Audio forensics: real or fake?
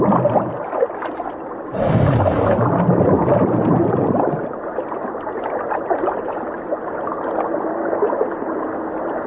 real